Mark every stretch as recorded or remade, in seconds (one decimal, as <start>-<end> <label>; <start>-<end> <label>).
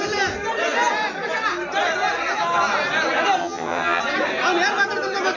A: 0.0-3.4 recorded; 3.4-4.0 remade; 4.0-5.4 recorded